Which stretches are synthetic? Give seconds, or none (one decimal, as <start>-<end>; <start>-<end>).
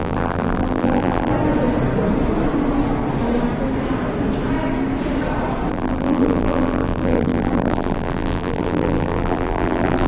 0.0-1.3; 5.7-10.1